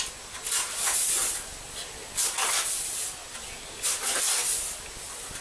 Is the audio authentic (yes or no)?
yes